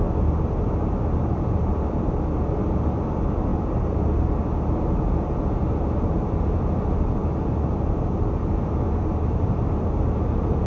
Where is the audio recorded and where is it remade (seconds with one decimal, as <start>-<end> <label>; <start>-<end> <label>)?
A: 0.0-10.7 recorded